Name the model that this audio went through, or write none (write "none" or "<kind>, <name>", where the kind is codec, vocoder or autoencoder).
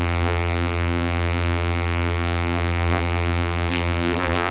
vocoder, BigVGAN v2